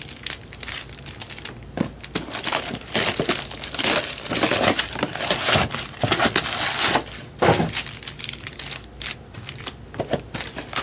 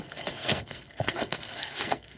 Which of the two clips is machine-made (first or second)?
second